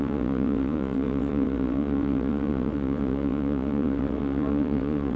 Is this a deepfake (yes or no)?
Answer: yes